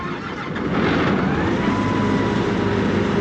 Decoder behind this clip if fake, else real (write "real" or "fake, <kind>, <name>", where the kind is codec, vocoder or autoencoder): real